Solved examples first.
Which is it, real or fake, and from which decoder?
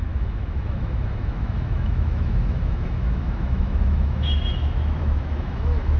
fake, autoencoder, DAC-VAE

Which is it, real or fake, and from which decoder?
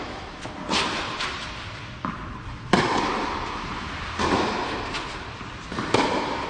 real